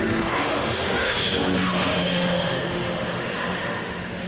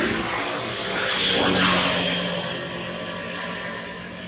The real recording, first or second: second